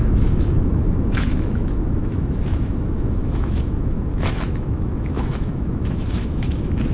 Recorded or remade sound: remade